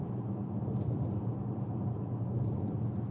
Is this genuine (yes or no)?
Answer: yes